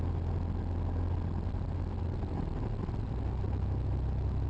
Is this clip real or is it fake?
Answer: real